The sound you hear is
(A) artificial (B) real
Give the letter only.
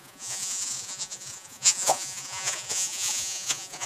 A